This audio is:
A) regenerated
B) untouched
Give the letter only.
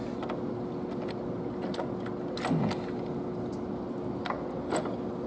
B